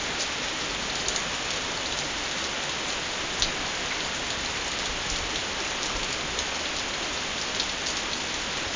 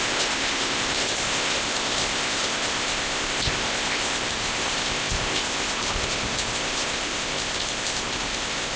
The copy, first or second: second